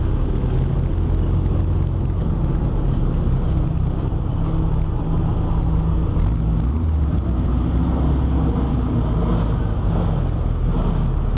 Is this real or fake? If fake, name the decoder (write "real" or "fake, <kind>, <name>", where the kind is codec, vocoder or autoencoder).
real